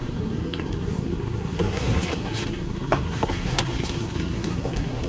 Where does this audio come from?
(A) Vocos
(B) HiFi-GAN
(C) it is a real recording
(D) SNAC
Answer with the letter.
D